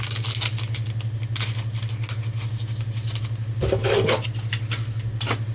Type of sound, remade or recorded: recorded